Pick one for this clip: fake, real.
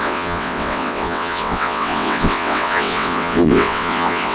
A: fake